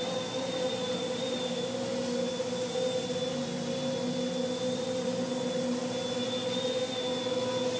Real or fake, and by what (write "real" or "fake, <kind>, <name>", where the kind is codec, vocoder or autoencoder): real